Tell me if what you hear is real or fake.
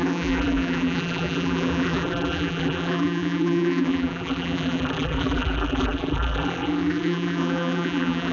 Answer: fake